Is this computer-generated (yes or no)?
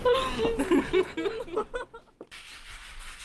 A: no